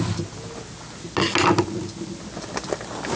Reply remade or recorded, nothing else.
recorded